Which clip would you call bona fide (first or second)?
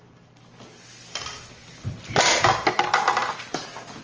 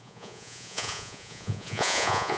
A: first